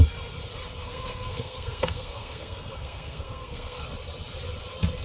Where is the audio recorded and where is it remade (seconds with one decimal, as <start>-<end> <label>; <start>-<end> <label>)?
0.0-0.8 recorded; 0.8-3.8 remade; 3.8-5.0 recorded